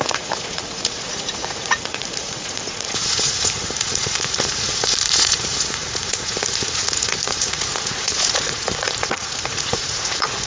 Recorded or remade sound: remade